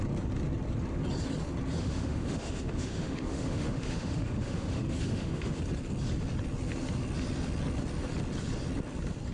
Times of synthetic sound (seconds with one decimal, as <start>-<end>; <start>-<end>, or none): 1.8-5.6